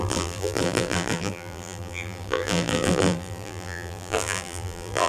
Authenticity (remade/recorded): remade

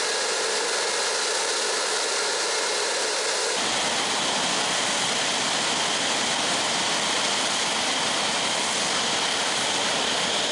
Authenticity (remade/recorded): recorded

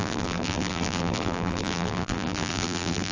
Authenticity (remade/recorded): remade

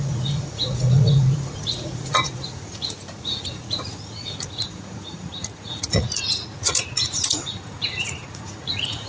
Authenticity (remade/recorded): remade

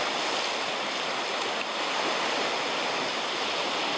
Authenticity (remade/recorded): recorded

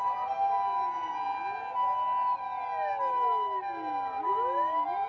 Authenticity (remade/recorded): recorded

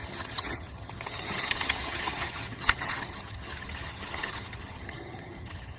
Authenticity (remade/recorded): remade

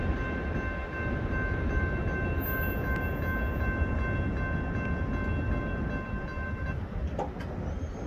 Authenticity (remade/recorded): recorded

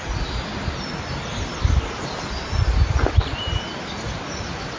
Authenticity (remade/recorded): recorded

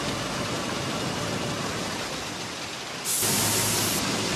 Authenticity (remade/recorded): recorded